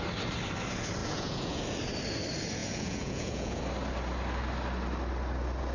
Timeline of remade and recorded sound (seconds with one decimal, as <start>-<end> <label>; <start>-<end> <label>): 0.0-1.0 recorded; 1.0-1.6 remade; 1.6-2.6 recorded; 2.6-3.6 remade; 3.6-5.7 recorded